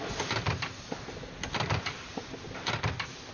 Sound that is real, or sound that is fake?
real